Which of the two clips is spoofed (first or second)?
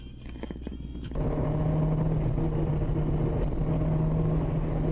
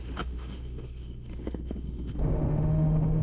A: second